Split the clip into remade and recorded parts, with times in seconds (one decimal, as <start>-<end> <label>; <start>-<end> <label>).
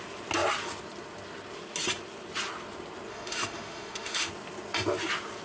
0.0-3.1 recorded; 3.1-4.3 remade; 4.3-5.4 recorded